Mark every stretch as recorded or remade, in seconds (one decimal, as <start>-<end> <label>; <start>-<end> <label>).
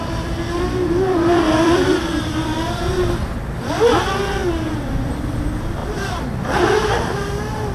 0.0-2.8 remade; 2.8-5.8 recorded; 5.8-7.3 remade; 7.3-7.7 recorded